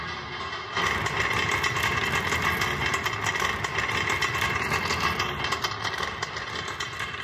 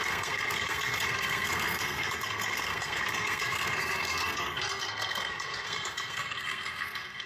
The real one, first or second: first